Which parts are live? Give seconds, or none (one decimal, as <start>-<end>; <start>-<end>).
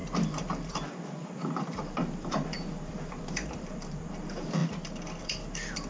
4.6-5.2